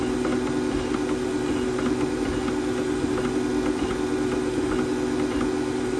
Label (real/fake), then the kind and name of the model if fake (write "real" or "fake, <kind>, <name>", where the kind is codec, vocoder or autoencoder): real